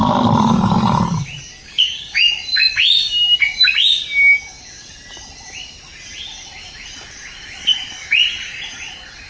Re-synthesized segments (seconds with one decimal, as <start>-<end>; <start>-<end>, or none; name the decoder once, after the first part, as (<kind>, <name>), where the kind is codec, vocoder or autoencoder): 1.6-2.1 (codec, DAC)

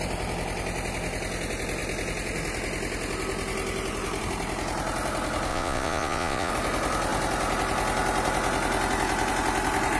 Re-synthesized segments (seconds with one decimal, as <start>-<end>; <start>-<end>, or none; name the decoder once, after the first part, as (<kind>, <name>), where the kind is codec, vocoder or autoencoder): 5.5-6.5 (vocoder, Vocos)

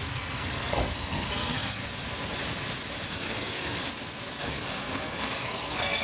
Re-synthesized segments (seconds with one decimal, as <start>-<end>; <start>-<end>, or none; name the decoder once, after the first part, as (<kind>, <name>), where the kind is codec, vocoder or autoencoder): 0.0-1.8 (codec, SNAC); 3.1-3.9; 4.4-6.0

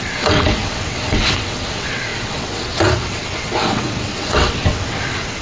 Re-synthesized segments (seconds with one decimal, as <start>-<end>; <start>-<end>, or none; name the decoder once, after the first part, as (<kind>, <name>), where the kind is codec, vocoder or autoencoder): 0.0-5.4 (vocoder, WaveNeXt)

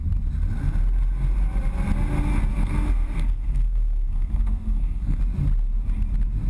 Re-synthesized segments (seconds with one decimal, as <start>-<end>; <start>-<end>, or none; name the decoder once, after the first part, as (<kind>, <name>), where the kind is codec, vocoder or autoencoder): 2.5-5.2 (codec, SNAC)

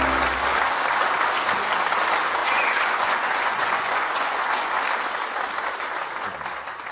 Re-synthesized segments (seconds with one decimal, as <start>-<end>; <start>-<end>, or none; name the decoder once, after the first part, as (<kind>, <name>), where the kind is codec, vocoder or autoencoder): 2.4-4.7 (vocoder, Vocos)

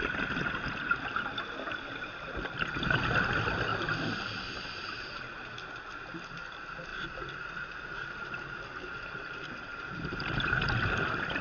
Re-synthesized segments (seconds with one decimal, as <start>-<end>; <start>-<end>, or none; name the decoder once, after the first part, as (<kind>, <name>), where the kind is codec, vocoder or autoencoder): 3.7-5.2 (vocoder, BigVGAN v2); 6.9-10.8